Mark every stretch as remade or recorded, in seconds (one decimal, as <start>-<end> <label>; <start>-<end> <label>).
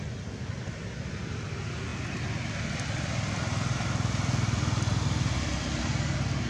0.0-6.5 recorded